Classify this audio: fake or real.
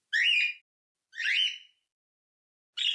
real